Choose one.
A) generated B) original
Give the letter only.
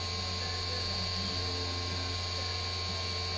B